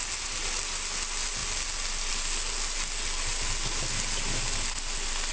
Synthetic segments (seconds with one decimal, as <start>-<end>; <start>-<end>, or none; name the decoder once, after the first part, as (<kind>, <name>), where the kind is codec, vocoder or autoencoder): none